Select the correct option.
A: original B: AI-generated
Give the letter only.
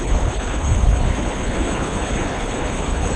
B